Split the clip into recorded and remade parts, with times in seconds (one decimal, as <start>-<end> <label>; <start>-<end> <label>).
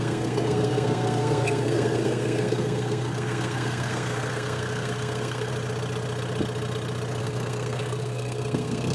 0.0-5.5 remade; 5.5-7.2 recorded; 7.2-8.9 remade